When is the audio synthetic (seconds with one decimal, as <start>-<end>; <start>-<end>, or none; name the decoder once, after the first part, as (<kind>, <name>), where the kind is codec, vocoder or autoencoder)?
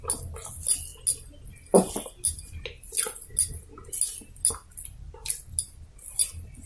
none